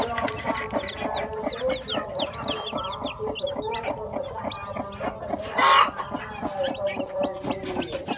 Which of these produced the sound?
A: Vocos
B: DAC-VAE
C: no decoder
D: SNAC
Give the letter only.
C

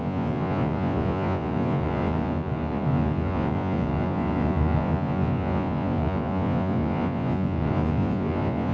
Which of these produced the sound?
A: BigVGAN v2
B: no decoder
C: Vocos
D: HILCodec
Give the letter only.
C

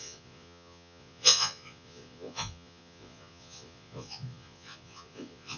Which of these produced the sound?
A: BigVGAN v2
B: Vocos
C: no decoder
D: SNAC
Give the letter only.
B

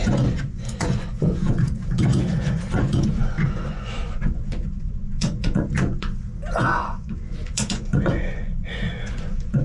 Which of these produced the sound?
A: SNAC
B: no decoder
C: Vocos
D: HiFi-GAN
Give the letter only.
C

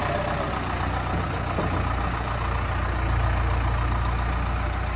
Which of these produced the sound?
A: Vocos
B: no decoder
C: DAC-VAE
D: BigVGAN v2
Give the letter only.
B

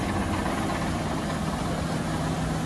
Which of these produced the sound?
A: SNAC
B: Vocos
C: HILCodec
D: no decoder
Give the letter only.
D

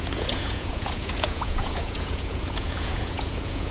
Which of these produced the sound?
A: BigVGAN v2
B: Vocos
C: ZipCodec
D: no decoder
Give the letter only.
B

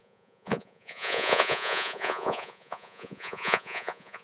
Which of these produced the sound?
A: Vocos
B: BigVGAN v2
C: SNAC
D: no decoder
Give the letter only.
A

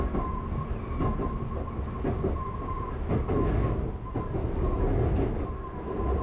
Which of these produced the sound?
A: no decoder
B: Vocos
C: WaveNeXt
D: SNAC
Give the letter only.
A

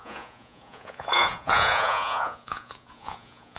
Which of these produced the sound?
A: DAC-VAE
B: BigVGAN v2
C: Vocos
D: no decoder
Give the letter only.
C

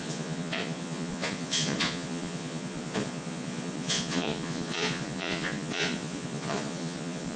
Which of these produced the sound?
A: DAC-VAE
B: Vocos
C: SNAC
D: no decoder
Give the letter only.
B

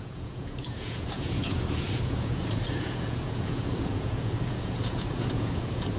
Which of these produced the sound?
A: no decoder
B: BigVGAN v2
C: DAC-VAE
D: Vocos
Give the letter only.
D